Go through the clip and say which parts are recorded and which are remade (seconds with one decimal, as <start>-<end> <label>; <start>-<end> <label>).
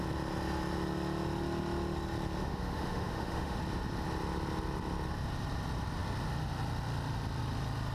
0.0-2.4 recorded; 2.4-3.6 remade; 3.6-7.9 recorded